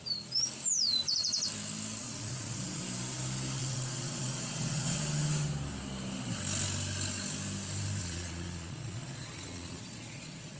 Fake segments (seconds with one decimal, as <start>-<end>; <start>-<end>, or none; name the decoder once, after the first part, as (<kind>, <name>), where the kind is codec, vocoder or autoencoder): 2.0-2.8 (vocoder, Vocos); 3.6-5.0; 8.0-10.6